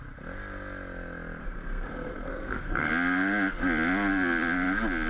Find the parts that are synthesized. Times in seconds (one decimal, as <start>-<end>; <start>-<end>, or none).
1.4-2.9